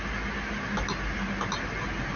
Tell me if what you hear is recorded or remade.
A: recorded